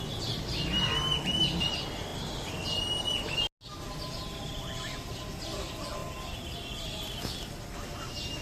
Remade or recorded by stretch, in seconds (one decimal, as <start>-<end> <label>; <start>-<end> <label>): 0.0-8.4 recorded